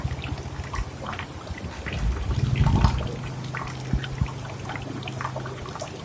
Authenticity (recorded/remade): recorded